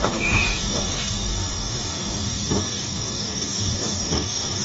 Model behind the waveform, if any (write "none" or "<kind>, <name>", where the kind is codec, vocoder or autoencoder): codec, DAC